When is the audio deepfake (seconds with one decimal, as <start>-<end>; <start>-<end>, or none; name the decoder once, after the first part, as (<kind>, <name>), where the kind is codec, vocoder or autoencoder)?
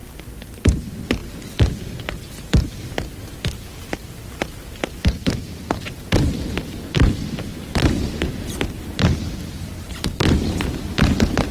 7.5-9.2 (vocoder, BigVGAN v2)